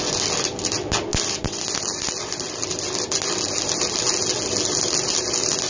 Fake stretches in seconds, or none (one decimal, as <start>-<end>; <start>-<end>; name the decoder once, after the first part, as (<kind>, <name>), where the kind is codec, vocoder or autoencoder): none